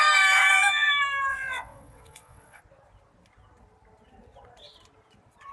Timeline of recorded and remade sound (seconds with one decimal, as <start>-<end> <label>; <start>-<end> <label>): 0.0-1.3 recorded; 1.3-2.6 remade; 2.6-5.5 recorded